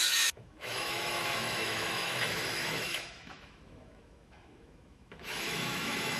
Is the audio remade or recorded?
remade